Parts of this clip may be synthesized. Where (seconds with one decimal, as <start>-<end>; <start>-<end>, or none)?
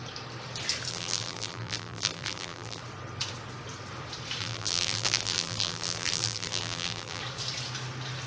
0.9-2.8; 4.4-7.2